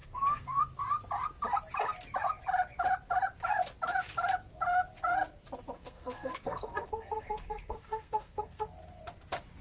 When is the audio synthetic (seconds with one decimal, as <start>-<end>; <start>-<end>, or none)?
0.0-0.6; 5.8-8.6